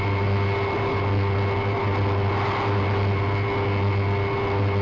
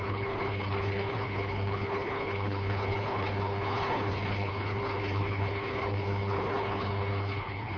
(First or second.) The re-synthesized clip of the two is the second